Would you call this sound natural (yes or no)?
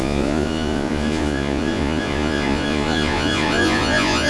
no